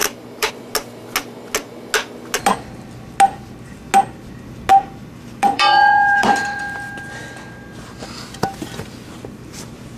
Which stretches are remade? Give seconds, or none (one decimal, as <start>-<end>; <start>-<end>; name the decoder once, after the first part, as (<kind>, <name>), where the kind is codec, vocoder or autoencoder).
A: 0.0-0.5 (vocoder, BigVGAN v2); 4.7-6.6